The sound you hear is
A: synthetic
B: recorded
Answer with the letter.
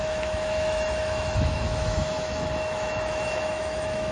A